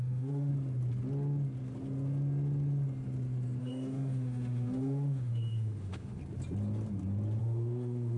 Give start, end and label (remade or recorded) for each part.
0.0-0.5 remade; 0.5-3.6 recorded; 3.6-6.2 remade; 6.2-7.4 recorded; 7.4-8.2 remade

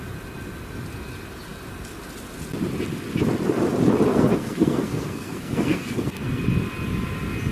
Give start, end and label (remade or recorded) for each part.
0.0-4.1 recorded; 4.1-6.4 remade; 6.4-7.5 recorded

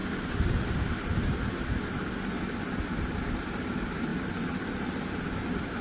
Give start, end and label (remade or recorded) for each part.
0.0-5.8 recorded

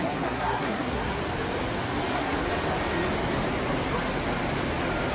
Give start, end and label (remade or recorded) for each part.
0.0-1.2 remade; 1.2-2.1 recorded; 2.1-2.5 remade; 2.5-5.1 recorded

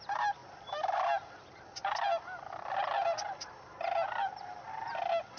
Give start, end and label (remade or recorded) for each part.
0.0-5.4 recorded

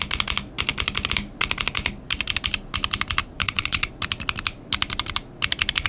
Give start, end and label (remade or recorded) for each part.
0.0-3.2 recorded; 3.2-3.9 remade; 3.9-5.9 recorded